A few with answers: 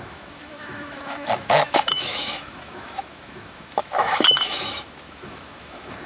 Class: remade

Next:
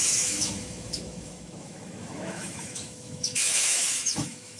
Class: remade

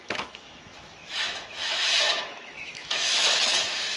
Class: remade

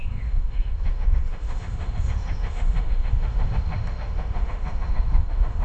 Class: remade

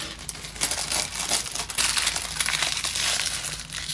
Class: recorded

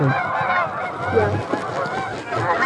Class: recorded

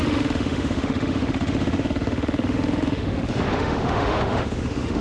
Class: remade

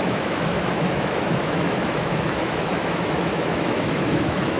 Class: remade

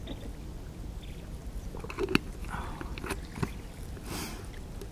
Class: recorded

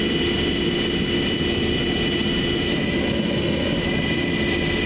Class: recorded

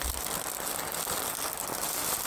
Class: recorded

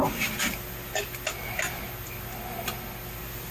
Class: recorded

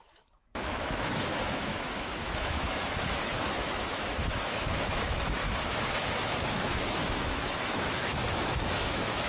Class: remade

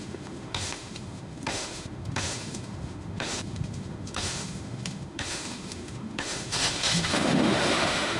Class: remade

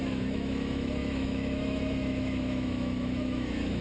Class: remade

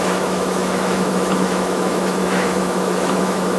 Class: remade